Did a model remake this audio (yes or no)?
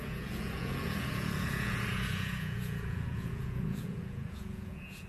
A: yes